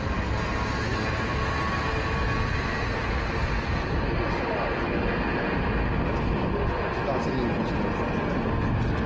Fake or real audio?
real